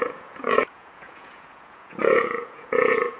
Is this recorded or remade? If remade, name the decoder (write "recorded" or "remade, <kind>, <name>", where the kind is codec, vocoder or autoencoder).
remade, vocoder, Vocos